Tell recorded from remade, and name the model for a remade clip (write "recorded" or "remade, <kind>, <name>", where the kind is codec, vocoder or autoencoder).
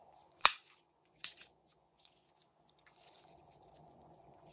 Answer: remade, vocoder, Vocos